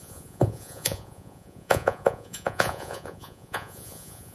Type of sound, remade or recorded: remade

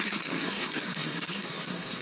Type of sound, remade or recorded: remade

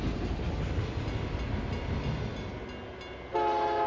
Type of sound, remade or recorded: recorded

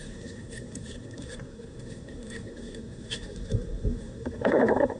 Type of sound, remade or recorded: remade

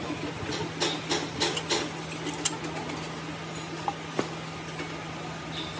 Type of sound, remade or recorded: recorded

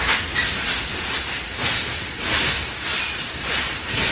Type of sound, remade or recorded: recorded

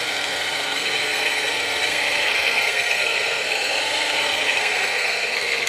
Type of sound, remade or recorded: remade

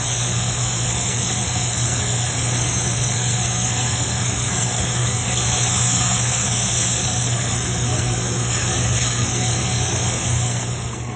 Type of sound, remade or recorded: remade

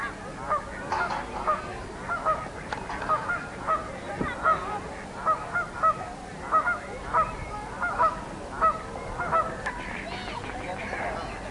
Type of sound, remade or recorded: recorded